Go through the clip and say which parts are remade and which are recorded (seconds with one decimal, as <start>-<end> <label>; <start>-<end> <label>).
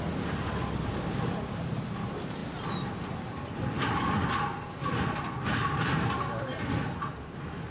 0.0-7.7 recorded